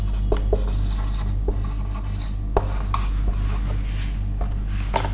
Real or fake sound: real